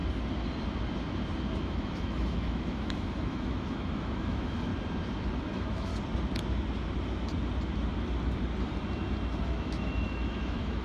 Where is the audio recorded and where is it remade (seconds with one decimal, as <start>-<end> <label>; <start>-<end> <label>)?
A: 0.0-1.6 recorded; 1.6-4.7 remade; 4.7-5.4 recorded; 5.4-5.9 remade; 5.9-9.4 recorded; 9.4-10.8 remade